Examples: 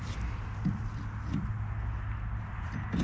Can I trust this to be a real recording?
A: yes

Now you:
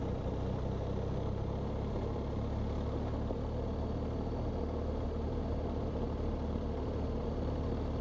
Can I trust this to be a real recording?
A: yes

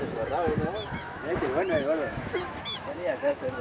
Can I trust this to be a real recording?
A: no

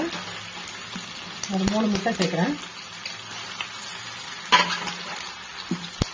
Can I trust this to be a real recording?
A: yes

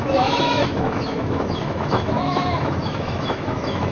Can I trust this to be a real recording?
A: no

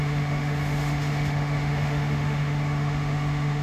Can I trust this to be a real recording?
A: no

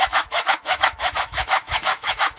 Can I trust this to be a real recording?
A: no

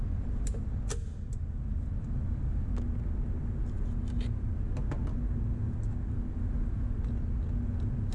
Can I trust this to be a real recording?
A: yes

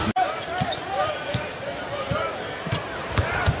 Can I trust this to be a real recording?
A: yes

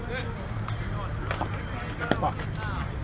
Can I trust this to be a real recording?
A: yes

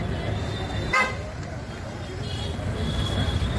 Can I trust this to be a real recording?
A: yes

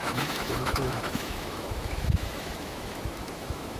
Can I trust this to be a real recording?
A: no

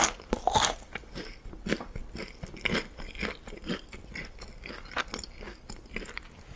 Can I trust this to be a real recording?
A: yes